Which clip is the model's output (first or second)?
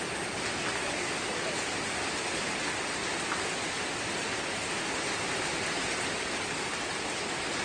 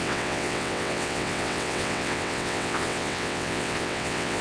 second